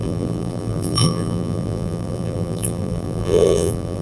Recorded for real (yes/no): no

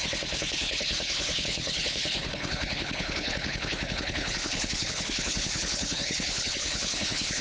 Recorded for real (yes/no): no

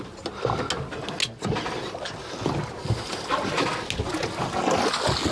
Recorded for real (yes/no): yes